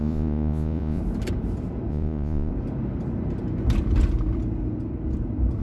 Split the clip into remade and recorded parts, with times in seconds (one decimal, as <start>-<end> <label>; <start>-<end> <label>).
0.0-1.0 remade; 1.0-1.9 recorded; 1.9-2.5 remade; 2.5-5.6 recorded